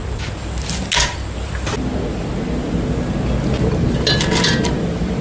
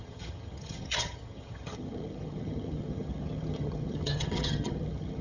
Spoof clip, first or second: second